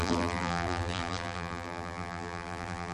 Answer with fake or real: fake